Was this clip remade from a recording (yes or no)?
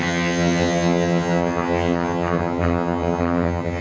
yes